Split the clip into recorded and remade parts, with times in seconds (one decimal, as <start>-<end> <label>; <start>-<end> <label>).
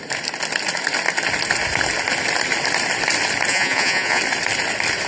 0.0-3.5 recorded; 3.5-4.2 remade; 4.2-5.1 recorded